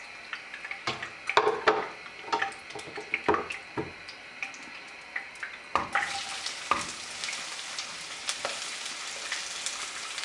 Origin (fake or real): real